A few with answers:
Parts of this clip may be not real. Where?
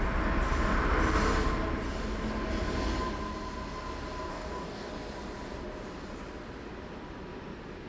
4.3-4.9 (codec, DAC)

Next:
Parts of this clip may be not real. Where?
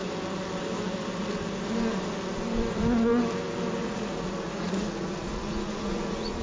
3.8-6.4 (vocoder, Vocos)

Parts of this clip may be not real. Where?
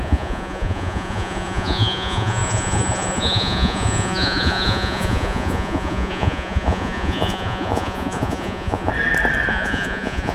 0.0-8.9 (vocoder, Vocos); 9.5-10.3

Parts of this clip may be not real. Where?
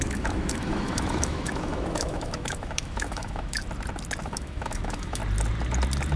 0.0-3.6 (autoencoder, DAC-VAE); 4.2-5.2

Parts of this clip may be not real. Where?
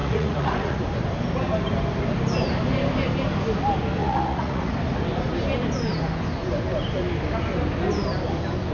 0.0-0.8 (vocoder, Vocos); 4.0-4.7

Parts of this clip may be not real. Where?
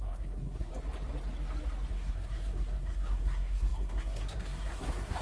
0.0-0.7 (codec, SNAC); 1.9-5.2